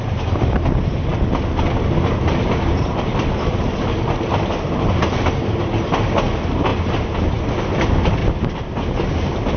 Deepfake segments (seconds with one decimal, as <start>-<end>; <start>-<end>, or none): none